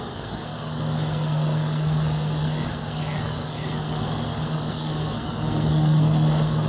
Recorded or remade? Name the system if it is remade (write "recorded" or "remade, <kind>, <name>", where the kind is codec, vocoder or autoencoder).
remade, codec, SNAC